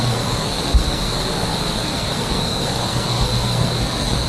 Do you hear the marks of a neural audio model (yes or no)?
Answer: yes